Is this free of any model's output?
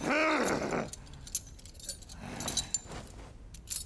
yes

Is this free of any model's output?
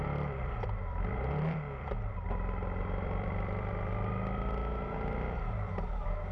no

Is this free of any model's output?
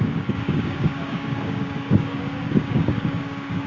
no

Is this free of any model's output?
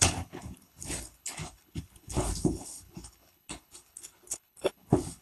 no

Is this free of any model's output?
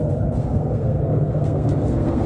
no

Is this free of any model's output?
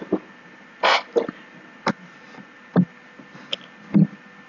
yes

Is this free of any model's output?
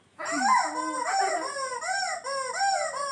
yes